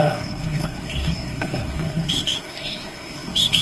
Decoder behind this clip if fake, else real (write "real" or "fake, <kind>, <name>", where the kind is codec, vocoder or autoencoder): fake, codec, SNAC